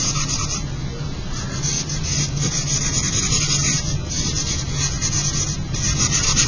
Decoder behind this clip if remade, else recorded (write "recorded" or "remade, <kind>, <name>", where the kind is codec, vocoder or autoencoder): recorded